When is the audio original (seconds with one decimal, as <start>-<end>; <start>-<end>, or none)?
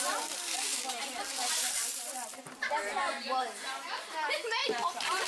0.0-0.7; 3.9-4.6